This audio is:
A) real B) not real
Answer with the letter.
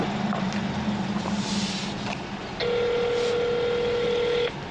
A